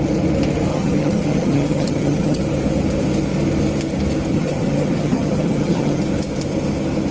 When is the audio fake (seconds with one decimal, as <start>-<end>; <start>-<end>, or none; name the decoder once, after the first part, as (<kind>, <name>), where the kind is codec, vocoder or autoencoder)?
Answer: 0.7-2.4 (vocoder, HiFi-GAN); 4.3-6.0